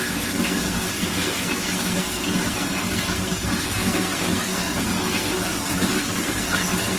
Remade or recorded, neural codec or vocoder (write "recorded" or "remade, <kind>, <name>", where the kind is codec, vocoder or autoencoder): remade, codec, SNAC